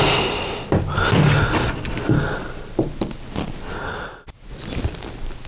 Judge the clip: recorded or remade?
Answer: recorded